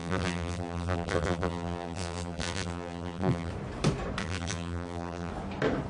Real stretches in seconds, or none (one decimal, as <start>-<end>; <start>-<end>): 3.5-4.2; 5.3-5.9